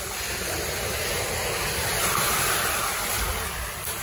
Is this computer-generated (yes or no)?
no